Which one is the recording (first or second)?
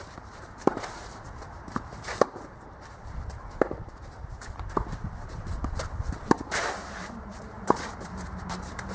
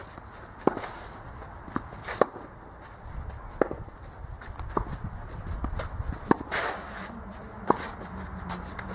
second